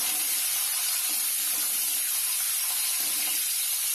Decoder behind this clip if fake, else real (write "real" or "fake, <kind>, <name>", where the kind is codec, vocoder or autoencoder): real